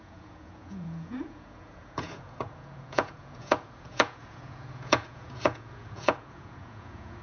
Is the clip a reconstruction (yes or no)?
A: yes